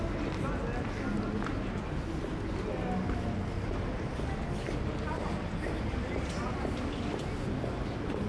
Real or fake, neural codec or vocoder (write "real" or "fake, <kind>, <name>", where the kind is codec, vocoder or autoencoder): real